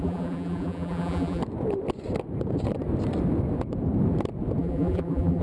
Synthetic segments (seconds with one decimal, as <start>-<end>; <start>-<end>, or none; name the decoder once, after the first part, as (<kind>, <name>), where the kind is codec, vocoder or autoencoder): 0.0-1.4 (vocoder, BigVGAN v2); 4.6-5.4